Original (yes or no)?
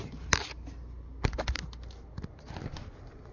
yes